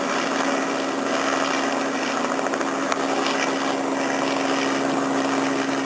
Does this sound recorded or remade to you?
recorded